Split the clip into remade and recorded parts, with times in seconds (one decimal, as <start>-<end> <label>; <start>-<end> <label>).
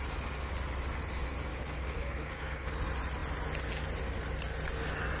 0.0-1.5 recorded; 1.5-2.8 remade; 2.8-5.2 recorded